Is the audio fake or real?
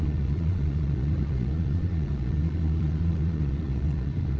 fake